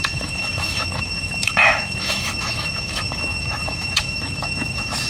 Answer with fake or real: fake